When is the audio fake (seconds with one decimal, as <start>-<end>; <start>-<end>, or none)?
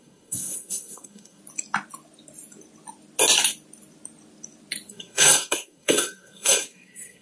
0.0-1.4; 4.9-7.2